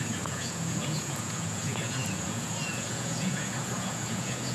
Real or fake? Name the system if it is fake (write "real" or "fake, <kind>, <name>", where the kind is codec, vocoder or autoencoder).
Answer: fake, vocoder, Vocos